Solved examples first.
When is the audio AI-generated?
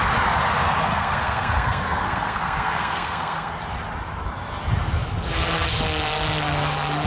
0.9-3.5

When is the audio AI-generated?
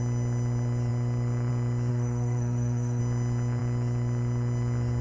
1.9-3.0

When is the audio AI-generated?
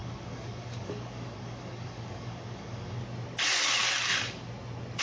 0.0-3.0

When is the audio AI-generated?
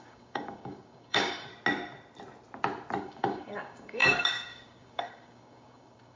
0.0-1.5; 3.0-6.2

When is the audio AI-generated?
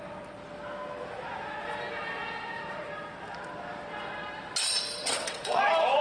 5.0-5.6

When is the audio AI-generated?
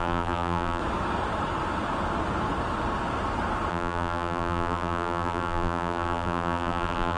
0.0-0.8; 3.7-7.2